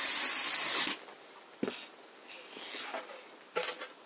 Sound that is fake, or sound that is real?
real